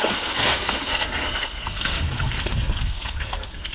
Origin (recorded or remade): remade